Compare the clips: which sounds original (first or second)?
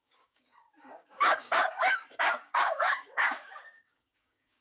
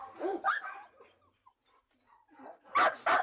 second